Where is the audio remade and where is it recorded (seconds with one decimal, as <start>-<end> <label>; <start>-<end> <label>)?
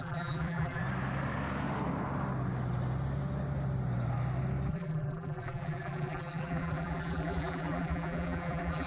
0.0-0.8 remade; 0.8-4.7 recorded; 4.7-8.9 remade